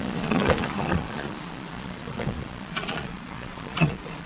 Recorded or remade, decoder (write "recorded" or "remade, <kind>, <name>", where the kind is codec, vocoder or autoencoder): remade, vocoder, Vocos